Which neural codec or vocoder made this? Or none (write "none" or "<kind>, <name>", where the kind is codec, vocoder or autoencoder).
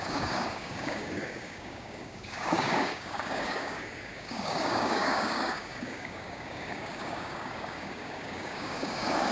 codec, DAC